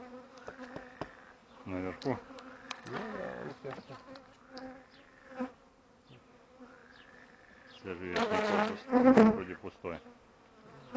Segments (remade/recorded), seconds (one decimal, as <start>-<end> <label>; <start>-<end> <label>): 0.0-11.0 recorded